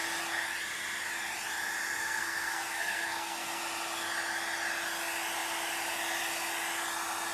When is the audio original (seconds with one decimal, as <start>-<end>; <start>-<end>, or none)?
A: 0.0-2.0; 3.6-7.3